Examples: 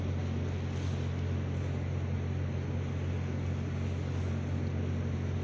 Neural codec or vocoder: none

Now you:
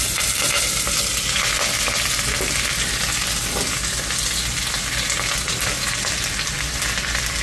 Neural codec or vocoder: none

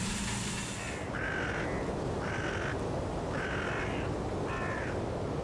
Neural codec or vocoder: none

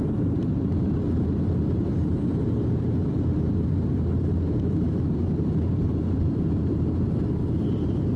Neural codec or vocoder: vocoder, BigVGAN v2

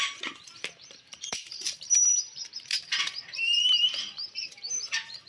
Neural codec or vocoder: vocoder, BigVGAN v2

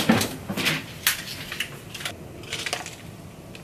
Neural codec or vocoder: none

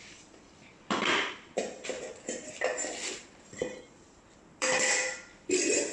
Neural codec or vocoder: vocoder, BigVGAN v2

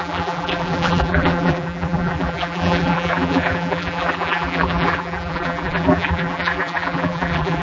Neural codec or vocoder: vocoder, BigVGAN v2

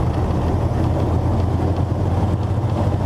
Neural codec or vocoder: none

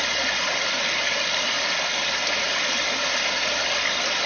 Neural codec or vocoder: none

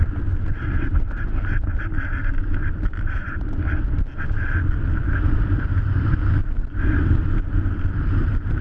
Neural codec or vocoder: vocoder, BigVGAN v2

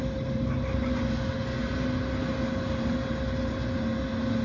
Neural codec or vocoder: none